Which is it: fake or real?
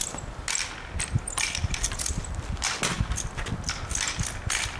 real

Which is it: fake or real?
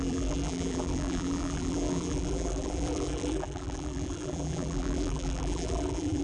fake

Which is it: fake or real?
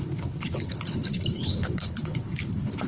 fake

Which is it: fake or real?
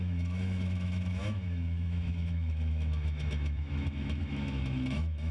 fake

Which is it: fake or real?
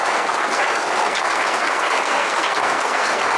fake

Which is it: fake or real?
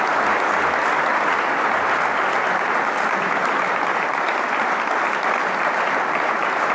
real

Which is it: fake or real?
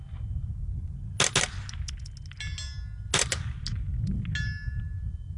real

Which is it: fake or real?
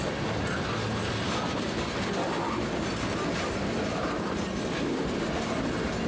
real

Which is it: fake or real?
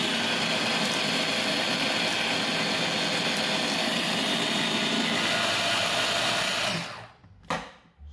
real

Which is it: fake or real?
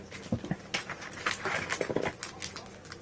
real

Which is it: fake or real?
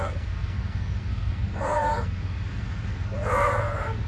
fake